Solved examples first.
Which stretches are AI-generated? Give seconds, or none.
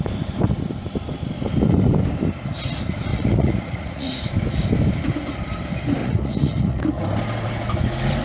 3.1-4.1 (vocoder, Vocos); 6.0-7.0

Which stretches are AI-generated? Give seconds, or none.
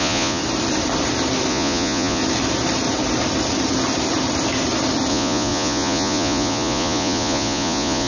0.0-0.4 (vocoder, Vocos); 1.5-2.2; 5.1-8.1